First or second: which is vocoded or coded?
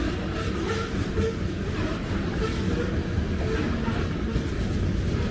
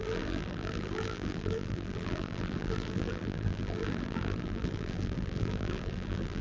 second